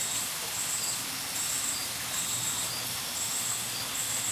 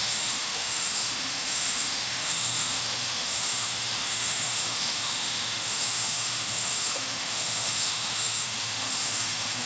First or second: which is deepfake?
second